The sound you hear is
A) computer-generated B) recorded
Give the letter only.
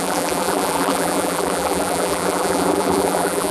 A